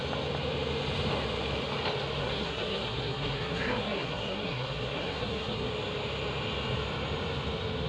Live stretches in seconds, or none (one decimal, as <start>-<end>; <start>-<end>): 0.0-2.2; 5.7-7.9